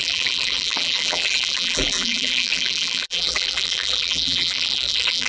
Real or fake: fake